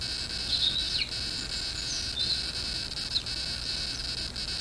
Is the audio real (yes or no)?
yes